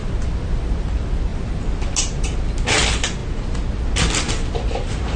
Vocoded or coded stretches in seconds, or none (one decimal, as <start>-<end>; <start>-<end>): none